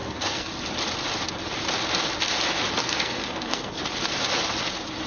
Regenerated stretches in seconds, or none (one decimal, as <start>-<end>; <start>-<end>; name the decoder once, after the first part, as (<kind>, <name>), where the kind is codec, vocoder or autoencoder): 0.0-0.5 (codec, SNAC); 2.8-3.8